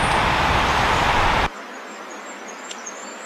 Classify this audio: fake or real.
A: real